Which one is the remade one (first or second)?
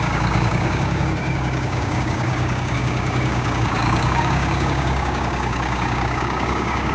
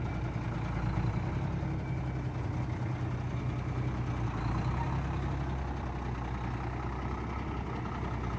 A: first